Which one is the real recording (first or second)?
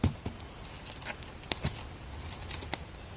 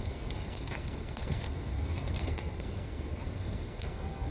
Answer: first